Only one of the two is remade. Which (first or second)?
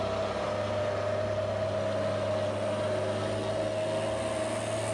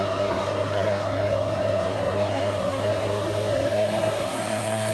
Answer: second